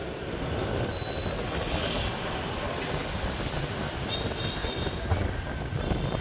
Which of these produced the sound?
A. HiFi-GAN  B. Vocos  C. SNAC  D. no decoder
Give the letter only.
D